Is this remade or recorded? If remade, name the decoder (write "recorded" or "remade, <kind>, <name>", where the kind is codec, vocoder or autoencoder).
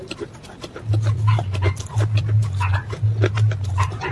recorded